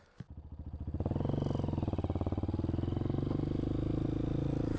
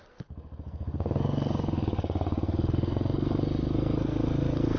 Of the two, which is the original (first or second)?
first